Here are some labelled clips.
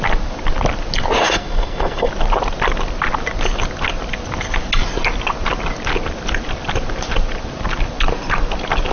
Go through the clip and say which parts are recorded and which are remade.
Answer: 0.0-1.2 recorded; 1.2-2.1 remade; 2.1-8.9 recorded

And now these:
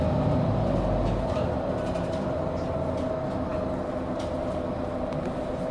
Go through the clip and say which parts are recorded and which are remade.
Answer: 0.0-5.7 recorded

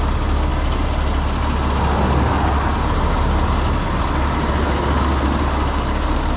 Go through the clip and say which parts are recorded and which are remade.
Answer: 0.0-6.4 recorded